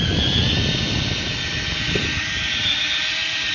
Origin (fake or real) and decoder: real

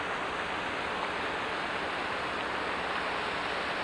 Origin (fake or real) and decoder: real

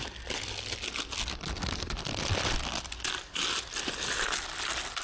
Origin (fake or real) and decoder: real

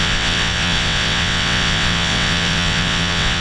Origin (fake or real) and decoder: fake, vocoder, WaveNeXt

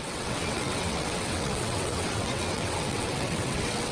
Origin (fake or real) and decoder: fake, vocoder, WaveNeXt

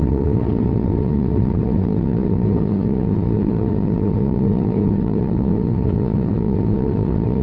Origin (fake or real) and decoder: fake, vocoder, WaveNeXt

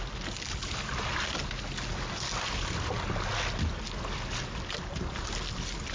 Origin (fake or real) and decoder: real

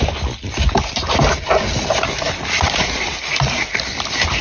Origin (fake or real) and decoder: real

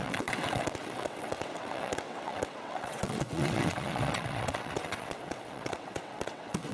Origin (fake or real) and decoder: fake, vocoder, WaveNeXt